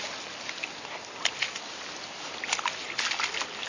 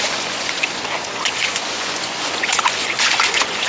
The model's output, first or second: second